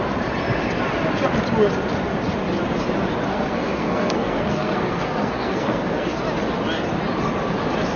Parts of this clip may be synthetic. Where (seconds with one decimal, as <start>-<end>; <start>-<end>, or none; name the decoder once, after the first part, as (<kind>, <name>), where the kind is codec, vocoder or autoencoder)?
3.3-6.2 (codec, SNAC)